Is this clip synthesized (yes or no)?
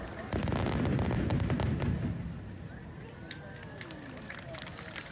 no